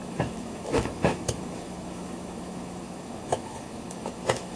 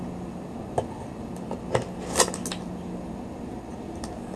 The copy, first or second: first